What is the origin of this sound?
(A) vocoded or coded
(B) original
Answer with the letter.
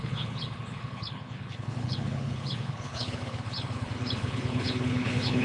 A